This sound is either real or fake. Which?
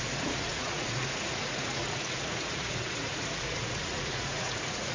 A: fake